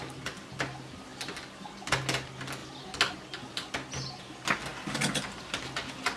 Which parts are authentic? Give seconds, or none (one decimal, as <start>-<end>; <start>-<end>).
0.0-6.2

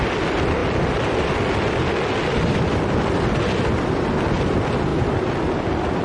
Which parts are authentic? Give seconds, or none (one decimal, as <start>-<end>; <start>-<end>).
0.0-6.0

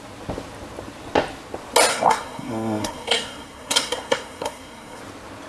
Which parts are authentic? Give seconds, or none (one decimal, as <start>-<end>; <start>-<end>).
0.0-1.9; 5.0-5.5

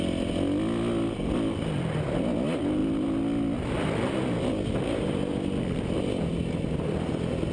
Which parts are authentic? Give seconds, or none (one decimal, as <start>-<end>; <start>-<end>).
0.0-7.5